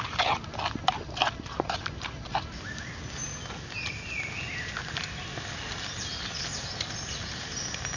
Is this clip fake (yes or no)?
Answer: no